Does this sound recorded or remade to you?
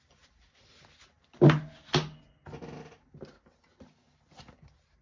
recorded